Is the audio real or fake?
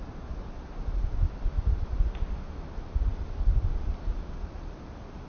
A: real